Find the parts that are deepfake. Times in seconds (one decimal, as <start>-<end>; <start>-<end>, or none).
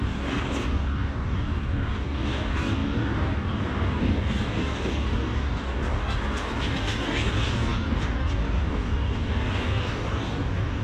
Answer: 0.0-10.8